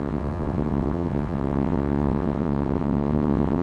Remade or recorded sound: remade